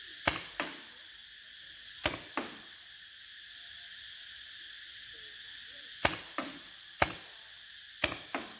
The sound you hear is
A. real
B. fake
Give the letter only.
A